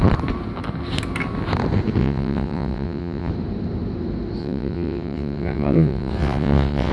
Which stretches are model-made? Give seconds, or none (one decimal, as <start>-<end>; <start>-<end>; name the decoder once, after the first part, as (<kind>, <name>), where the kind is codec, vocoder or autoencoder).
2.0-3.3 (vocoder, WaveNeXt); 4.4-6.9